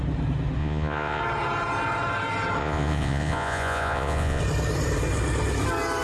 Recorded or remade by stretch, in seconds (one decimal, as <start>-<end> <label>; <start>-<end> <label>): 0.0-0.6 recorded; 0.6-1.2 remade; 1.2-2.6 recorded; 2.6-4.4 remade; 4.4-6.0 recorded